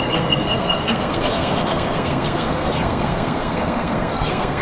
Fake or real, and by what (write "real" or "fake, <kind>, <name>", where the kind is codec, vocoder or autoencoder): fake, codec, SNAC